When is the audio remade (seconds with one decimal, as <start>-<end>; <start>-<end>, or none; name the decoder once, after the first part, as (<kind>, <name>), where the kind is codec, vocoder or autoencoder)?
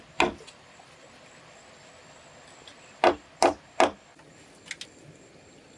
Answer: none